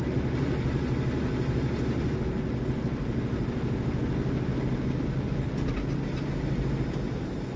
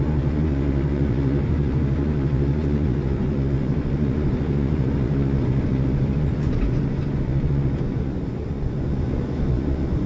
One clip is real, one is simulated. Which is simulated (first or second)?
second